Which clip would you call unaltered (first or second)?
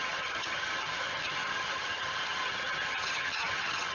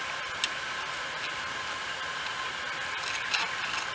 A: second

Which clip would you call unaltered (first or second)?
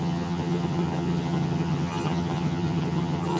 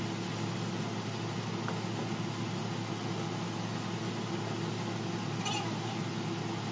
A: second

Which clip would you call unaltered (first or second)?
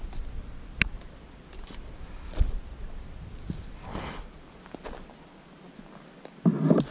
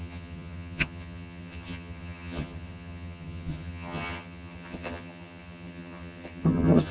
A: first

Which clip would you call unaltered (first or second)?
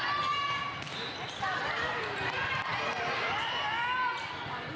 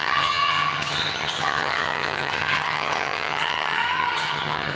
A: first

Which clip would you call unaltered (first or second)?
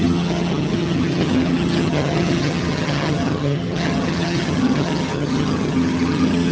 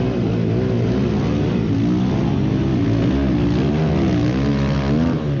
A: second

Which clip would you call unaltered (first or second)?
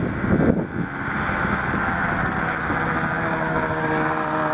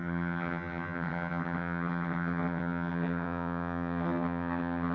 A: first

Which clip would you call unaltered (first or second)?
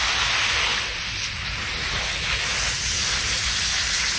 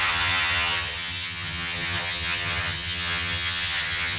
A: first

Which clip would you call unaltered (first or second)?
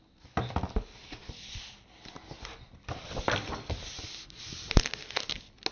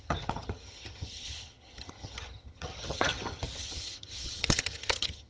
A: first